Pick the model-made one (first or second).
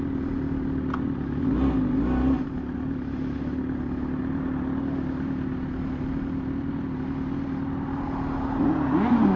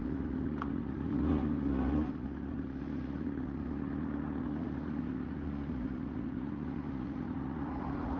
second